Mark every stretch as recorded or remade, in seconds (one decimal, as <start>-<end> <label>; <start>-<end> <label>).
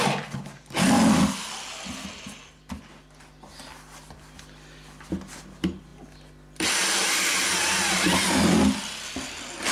0.0-9.7 recorded